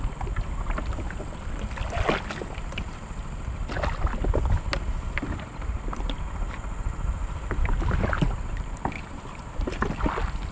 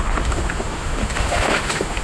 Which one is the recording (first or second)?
first